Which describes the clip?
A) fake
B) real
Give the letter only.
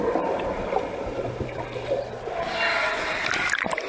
B